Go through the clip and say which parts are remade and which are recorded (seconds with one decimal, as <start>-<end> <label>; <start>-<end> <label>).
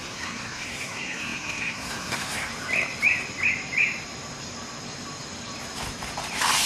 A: 0.0-2.5 remade; 2.5-6.7 recorded